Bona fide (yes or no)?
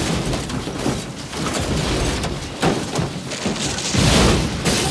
yes